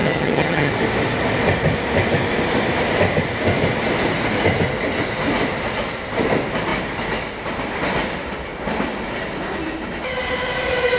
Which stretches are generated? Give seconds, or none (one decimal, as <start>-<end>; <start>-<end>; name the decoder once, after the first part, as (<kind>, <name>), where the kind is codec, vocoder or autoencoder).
0.0-0.7 (vocoder, HiFi-GAN)